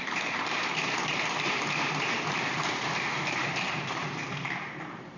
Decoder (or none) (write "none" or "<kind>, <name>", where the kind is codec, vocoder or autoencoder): vocoder, BigVGAN v2